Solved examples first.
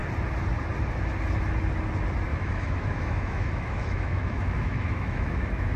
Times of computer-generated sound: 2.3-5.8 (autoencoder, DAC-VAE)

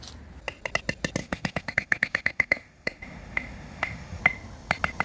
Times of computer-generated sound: 1.2-4.2 (autoencoder, DAC-VAE)

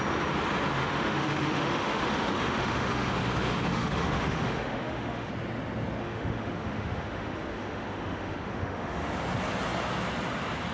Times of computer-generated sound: 0.8-3.1 (autoencoder, DAC-VAE); 3.7-5.3; 6.0-9.1

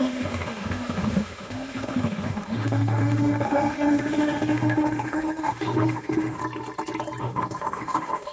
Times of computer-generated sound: 0.0-6.4 (autoencoder, DAC-VAE); 7.2-8.3

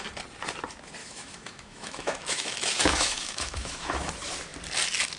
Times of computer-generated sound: 1.0-4.1 (autoencoder, DAC-VAE)